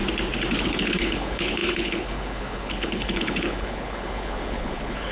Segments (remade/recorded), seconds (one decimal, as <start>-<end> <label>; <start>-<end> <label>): 0.0-0.6 recorded; 0.6-5.1 remade